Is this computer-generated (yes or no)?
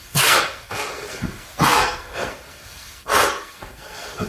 yes